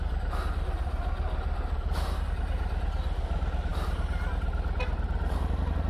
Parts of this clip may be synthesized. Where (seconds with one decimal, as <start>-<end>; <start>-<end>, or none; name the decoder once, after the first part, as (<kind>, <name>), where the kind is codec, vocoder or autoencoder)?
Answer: none